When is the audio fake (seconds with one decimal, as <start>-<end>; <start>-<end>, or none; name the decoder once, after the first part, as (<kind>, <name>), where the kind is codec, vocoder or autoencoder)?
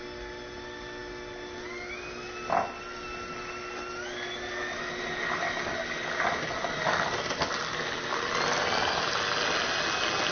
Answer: none